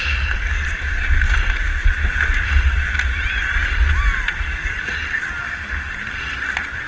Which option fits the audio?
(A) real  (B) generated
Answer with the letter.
A